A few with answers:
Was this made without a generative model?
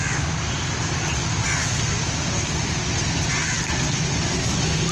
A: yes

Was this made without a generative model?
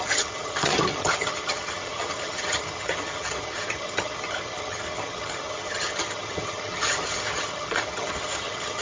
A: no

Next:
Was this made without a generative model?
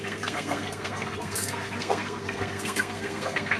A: no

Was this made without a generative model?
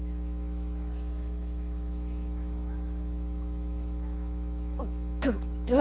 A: no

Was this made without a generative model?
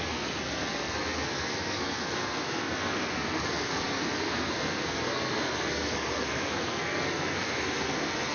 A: no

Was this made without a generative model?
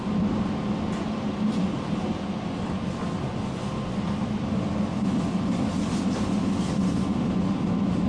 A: yes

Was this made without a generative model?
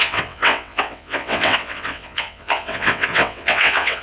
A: no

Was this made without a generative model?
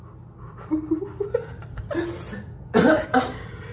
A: yes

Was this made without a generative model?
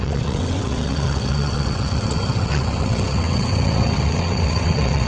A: no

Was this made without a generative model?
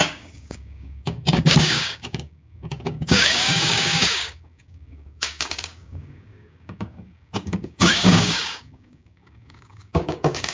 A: no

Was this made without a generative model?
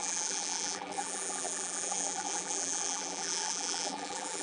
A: no